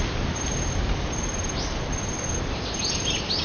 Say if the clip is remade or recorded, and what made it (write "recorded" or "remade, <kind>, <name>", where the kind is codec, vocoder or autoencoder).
recorded